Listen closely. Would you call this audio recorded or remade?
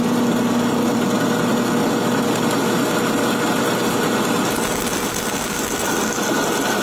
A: recorded